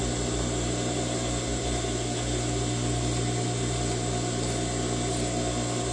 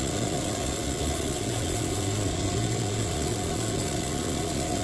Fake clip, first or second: second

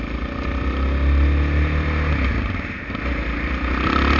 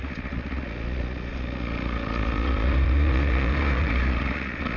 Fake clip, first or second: second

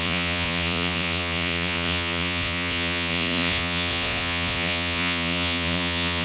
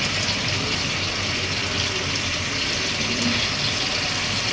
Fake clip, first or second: first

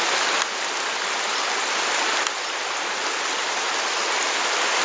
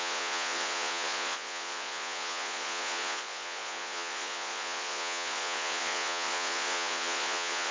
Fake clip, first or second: second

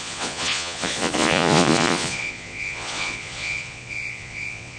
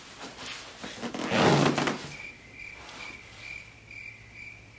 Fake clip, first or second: first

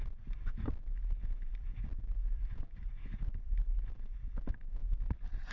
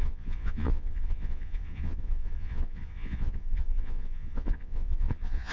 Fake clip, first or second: second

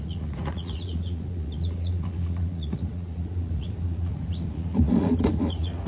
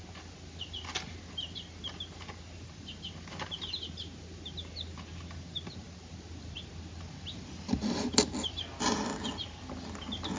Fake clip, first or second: first